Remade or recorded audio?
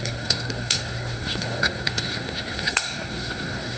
remade